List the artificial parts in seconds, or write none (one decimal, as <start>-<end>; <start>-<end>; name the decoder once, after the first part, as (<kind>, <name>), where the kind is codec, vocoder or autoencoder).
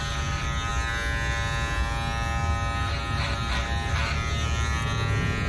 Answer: none